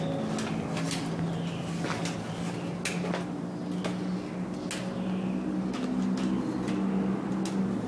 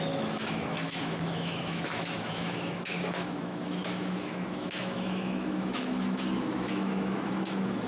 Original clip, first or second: first